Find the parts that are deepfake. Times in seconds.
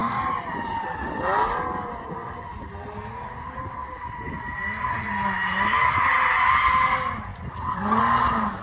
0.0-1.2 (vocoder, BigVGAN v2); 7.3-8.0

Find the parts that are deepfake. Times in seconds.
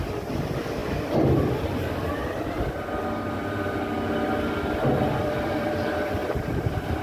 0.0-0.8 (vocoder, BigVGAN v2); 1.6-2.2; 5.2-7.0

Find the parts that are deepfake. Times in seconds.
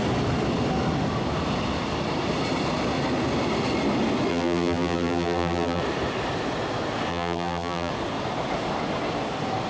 4.3-5.8 (vocoder, BigVGAN v2); 7.1-7.9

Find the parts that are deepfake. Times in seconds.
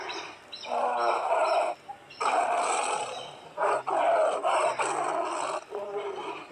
none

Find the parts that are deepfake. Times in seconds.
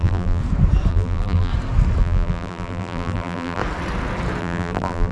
0.0-0.4 (vocoder, BigVGAN v2); 0.9-1.5; 2.0-3.6; 4.4-5.1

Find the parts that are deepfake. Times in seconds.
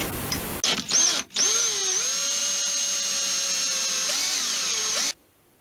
none